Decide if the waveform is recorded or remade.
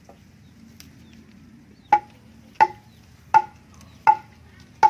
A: recorded